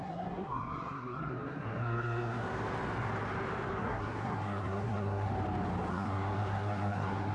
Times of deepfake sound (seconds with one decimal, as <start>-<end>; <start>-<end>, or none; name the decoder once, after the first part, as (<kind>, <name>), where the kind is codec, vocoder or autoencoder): 0.0-2.4 (codec, SNAC); 3.8-5.3; 5.9-7.3